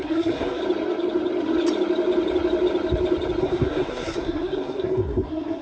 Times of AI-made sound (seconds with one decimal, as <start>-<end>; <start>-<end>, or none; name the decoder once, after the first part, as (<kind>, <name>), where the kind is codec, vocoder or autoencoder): 0.0-0.6 (codec, SNAC); 3.4-5.6